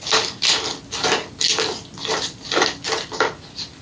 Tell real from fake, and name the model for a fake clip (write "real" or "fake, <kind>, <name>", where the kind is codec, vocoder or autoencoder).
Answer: real